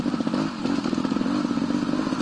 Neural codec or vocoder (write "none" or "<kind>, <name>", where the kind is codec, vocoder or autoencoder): none